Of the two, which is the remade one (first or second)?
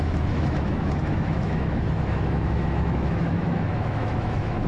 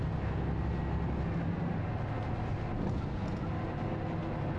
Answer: first